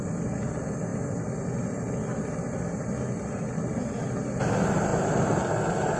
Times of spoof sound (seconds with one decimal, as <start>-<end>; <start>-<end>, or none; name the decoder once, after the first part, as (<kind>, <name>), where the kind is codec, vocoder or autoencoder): 4.9-5.5 (vocoder, BigVGAN v2)